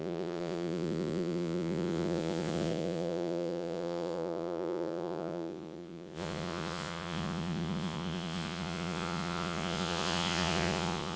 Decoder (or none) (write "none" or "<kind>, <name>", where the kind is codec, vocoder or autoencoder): vocoder, Vocos